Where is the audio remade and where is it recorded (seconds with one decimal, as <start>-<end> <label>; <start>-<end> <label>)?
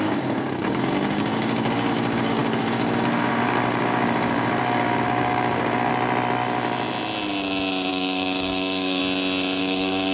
0.0-5.9 remade; 5.9-7.9 recorded; 7.9-9.0 remade; 9.0-9.6 recorded; 9.6-10.1 remade